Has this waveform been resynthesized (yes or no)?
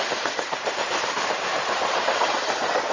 yes